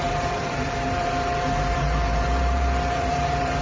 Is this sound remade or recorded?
remade